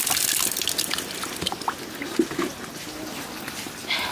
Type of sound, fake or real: real